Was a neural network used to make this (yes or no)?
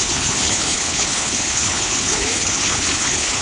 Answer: yes